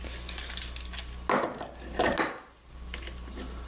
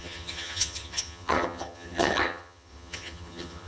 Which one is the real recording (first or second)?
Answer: first